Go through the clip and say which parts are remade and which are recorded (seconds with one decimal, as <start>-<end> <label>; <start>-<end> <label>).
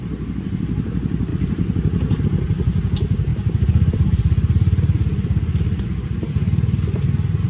0.0-1.3 recorded; 1.3-2.2 remade; 2.2-3.3 recorded; 3.3-6.2 remade; 6.2-7.5 recorded